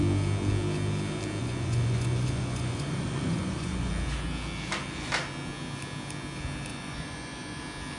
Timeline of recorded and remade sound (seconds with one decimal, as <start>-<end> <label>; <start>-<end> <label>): 0.0-1.4 recorded; 1.4-3.9 remade; 3.9-6.7 recorded; 6.7-7.6 remade; 7.6-8.0 recorded